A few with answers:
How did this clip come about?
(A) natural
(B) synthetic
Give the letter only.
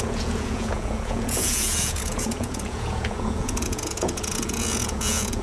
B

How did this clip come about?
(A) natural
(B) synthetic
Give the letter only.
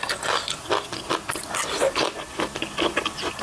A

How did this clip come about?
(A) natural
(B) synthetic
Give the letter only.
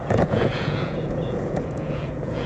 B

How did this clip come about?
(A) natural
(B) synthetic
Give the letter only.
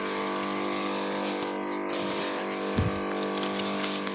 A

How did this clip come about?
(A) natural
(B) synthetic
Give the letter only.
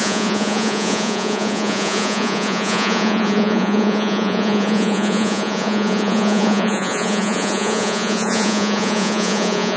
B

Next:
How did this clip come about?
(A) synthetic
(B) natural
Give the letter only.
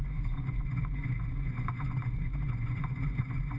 A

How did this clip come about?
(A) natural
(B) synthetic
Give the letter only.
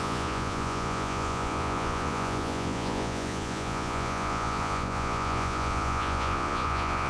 B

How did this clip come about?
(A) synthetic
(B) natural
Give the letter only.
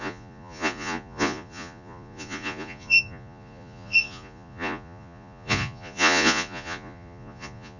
A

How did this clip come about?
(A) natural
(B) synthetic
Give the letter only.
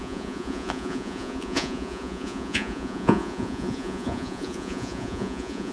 B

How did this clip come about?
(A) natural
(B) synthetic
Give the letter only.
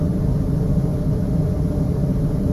A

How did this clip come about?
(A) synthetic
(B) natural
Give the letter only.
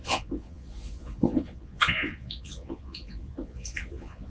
A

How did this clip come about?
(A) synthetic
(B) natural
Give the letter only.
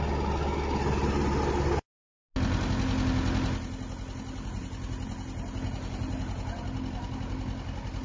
B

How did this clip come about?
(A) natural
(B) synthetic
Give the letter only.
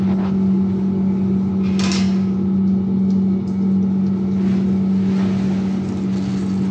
A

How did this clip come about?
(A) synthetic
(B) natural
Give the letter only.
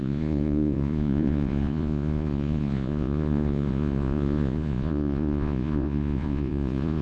A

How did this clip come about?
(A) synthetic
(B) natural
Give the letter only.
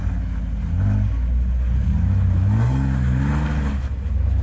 B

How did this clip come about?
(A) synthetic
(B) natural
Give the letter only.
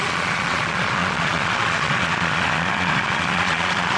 A